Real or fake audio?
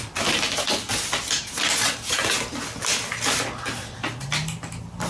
real